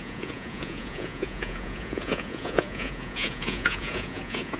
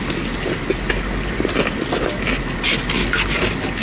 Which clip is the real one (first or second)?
second